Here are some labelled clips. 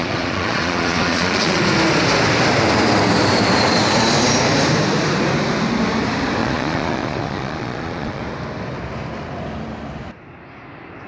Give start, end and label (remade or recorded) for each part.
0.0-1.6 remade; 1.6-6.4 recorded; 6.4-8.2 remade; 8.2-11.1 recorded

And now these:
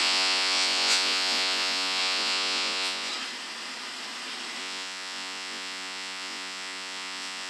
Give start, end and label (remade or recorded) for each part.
0.0-3.1 remade; 3.1-4.6 recorded; 4.6-7.5 remade

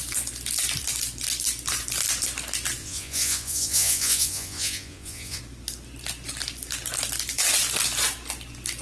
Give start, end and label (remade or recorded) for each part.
0.0-2.8 recorded; 2.8-5.4 remade; 5.4-8.8 recorded